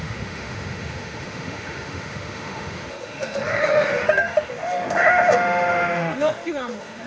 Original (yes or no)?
no